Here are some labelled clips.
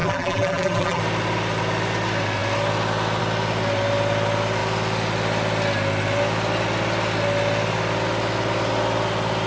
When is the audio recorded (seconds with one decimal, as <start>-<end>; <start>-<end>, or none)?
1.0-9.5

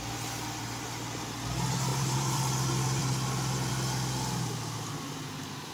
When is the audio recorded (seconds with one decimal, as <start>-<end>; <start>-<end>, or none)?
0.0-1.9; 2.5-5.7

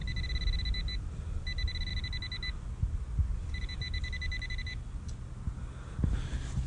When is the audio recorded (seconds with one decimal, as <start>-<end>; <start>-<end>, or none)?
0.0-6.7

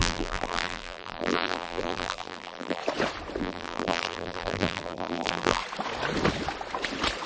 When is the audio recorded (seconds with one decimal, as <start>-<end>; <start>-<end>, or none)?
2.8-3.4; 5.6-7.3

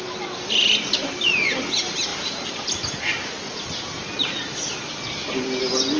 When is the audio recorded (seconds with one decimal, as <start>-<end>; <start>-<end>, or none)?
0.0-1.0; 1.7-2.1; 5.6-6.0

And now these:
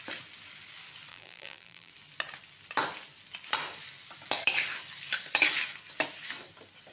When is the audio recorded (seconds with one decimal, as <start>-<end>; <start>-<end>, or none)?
0.0-1.1; 1.9-6.9

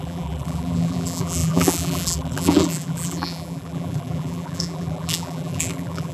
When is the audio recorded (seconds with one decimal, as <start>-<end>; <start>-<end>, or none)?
none